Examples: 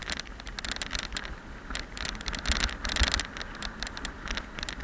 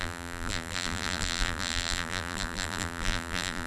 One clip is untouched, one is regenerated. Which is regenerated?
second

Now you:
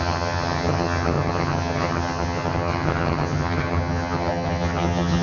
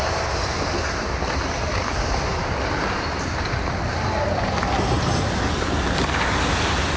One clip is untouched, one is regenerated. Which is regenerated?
first